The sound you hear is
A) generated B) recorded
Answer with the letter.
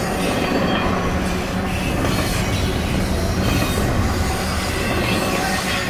B